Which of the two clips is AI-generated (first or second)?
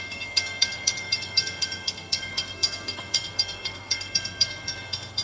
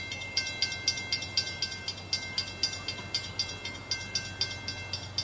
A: first